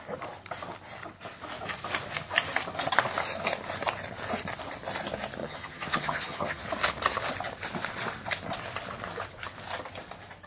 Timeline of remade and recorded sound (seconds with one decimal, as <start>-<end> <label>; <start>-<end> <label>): 0.0-5.4 recorded; 5.4-6.6 remade; 6.6-10.5 recorded

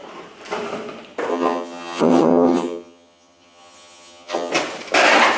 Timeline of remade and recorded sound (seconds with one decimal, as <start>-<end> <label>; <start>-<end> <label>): 0.0-1.3 recorded; 1.3-4.5 remade; 4.5-5.4 recorded

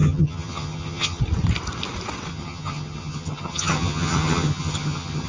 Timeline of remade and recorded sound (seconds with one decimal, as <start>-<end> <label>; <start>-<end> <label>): 0.0-1.2 remade; 1.2-2.3 recorded; 2.3-5.3 remade

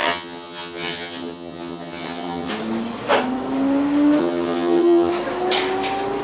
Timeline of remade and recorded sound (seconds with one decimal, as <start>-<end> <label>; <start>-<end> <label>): 0.0-2.5 remade; 2.5-4.2 recorded; 4.2-5.1 remade; 5.1-6.2 recorded

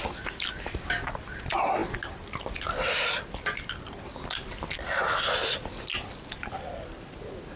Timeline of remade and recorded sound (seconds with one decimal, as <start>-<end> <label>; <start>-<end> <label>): 0.0-7.6 recorded

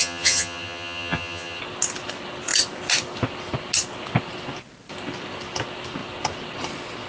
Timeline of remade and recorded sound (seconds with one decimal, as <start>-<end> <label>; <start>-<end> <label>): 0.0-1.6 remade; 1.6-7.1 recorded